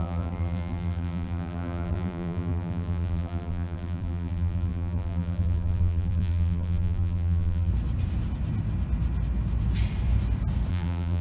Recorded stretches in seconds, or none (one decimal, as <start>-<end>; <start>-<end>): 7.7-10.7